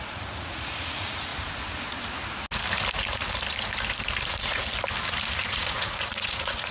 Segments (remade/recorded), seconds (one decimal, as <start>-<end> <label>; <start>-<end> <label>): 0.0-1.3 remade; 1.3-4.3 recorded; 4.3-4.7 remade; 4.7-5.5 recorded; 5.5-6.7 remade